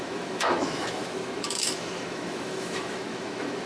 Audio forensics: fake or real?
fake